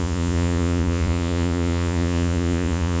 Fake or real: fake